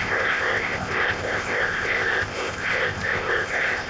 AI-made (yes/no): yes